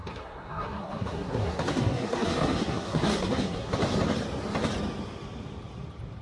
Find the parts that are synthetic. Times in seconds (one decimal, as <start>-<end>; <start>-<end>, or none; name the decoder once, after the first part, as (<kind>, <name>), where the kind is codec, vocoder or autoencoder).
0.0-3.7 (codec, SNAC)

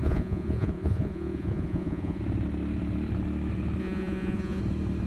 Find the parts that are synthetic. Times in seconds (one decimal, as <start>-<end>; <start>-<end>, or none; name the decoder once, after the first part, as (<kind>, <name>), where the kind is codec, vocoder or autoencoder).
0.0-2.2 (vocoder, Vocos); 3.8-4.6

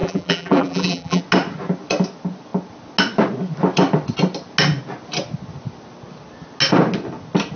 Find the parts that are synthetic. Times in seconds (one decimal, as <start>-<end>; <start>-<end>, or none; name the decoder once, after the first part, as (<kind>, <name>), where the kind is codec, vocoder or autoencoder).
0.0-1.2 (vocoder, BigVGAN v2)

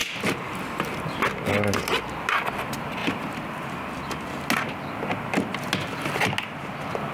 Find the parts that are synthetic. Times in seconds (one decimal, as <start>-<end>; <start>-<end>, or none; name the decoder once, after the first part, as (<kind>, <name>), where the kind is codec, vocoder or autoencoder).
none

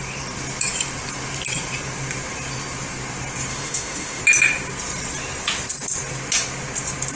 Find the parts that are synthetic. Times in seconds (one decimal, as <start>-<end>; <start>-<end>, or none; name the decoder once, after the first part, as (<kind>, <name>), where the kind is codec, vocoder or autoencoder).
3.5-4.2 (autoencoder, DAC-VAE)